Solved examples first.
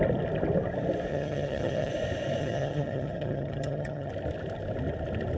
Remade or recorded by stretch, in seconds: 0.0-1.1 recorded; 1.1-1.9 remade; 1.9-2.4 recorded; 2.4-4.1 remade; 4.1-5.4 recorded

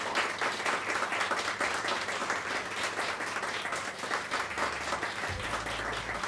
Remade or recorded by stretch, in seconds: 0.0-6.3 recorded

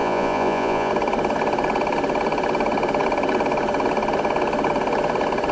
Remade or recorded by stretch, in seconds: 0.0-0.9 remade; 0.9-5.5 recorded

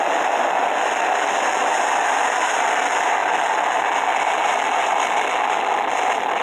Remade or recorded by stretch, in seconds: 0.0-6.4 recorded